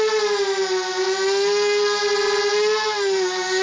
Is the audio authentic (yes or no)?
yes